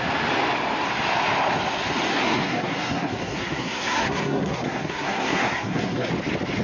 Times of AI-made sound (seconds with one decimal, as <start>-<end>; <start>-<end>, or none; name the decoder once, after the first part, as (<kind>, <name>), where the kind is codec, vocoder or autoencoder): 2.1-6.1 (codec, SNAC)